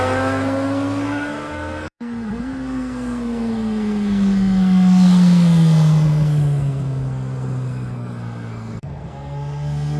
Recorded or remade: remade